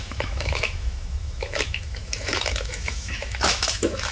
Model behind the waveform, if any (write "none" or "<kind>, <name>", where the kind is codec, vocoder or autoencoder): autoencoder, DAC-VAE